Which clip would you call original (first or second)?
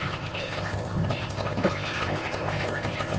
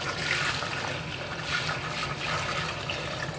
second